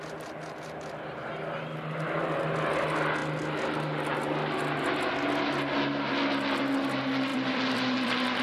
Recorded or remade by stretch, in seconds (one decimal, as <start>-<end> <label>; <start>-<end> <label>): 0.0-7.3 recorded; 7.3-8.4 remade